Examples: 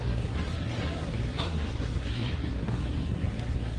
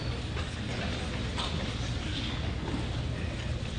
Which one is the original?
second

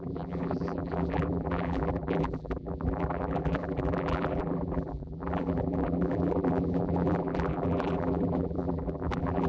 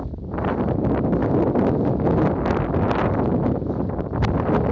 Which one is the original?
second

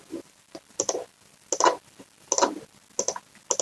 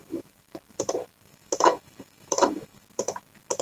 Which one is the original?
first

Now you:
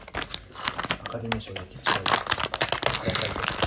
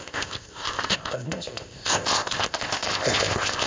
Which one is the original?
first